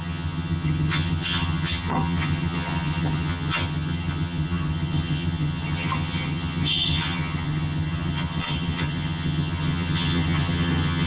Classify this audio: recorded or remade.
remade